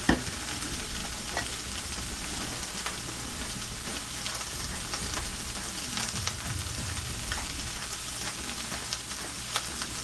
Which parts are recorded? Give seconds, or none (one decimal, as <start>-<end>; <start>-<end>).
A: 0.0-10.0